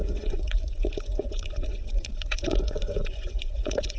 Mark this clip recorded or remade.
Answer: remade